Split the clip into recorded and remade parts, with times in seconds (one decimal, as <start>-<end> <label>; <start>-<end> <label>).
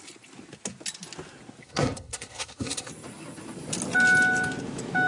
0.0-1.6 recorded; 1.6-2.9 remade; 2.9-5.1 recorded